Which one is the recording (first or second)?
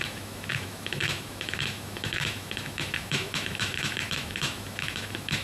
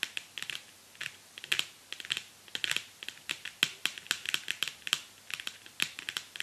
second